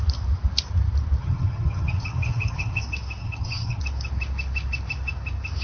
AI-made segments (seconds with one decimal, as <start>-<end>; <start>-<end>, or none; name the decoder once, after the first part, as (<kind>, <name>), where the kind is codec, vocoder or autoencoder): 1.2-2.8 (vocoder, HiFi-GAN); 3.2-3.8